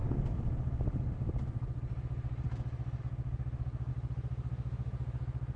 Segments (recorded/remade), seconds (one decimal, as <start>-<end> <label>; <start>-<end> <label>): 0.0-5.6 recorded